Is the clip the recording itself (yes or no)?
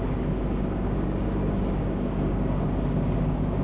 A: no